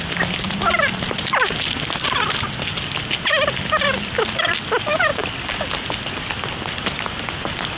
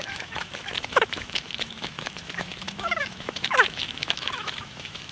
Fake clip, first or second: second